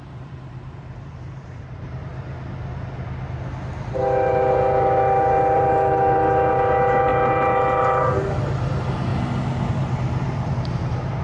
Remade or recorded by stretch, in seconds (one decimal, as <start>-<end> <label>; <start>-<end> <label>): 0.0-2.1 remade; 2.1-3.9 recorded; 3.9-9.1 remade; 9.1-9.7 recorded; 9.7-11.2 remade